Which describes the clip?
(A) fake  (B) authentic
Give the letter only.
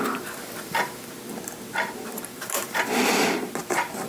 A